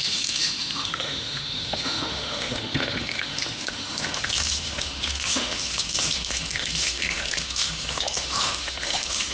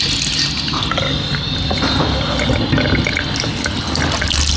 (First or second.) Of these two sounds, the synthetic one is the first